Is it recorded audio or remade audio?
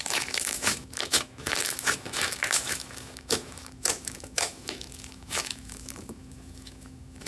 remade